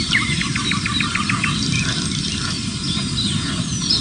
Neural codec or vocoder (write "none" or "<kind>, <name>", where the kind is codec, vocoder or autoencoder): none